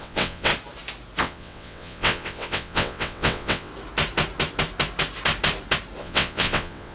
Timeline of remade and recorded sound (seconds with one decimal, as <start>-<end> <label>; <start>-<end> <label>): 0.0-0.5 remade; 0.5-1.2 recorded; 1.2-3.7 remade; 3.7-6.0 recorded; 6.0-6.9 remade